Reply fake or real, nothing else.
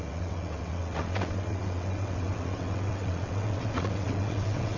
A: fake